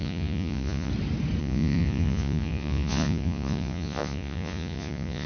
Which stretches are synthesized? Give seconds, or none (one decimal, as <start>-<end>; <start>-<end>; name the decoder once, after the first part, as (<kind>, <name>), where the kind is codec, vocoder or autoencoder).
0.0-0.9 (vocoder, Vocos); 1.4-5.3